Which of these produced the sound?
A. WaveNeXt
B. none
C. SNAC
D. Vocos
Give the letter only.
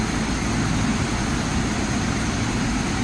B